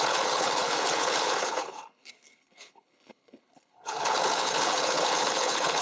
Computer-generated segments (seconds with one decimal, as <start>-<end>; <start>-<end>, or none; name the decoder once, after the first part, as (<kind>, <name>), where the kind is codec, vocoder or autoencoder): 0.0-5.8 (codec, HILCodec)